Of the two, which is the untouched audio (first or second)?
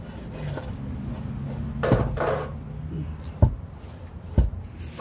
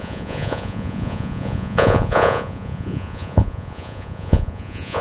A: first